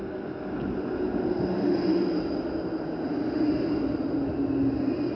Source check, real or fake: real